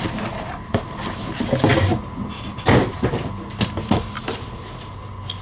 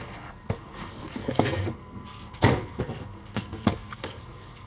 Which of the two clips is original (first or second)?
first